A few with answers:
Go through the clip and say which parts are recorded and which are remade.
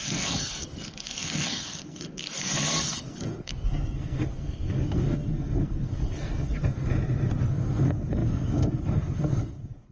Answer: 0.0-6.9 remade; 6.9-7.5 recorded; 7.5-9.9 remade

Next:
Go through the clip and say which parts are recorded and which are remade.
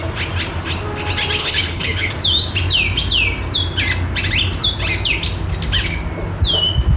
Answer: 0.0-1.4 recorded; 1.4-2.1 remade; 2.1-7.0 recorded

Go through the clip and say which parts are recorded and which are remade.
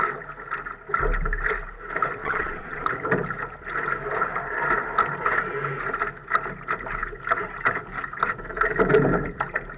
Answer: 0.0-2.2 recorded; 2.2-2.9 remade; 2.9-9.8 recorded